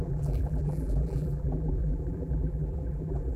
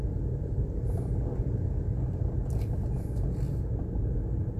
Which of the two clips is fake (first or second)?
first